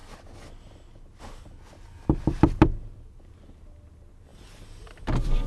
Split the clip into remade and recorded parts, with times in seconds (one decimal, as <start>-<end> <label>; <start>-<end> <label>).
0.0-5.5 recorded